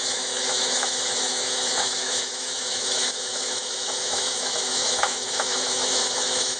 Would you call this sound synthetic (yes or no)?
yes